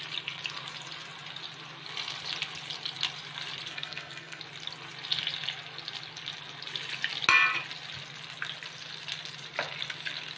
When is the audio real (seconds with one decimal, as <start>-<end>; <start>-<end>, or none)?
0.0-3.7; 4.4-10.4